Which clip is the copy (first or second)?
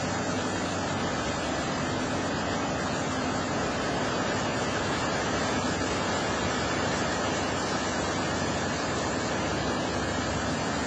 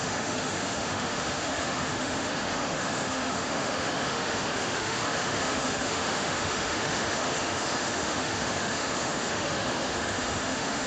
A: second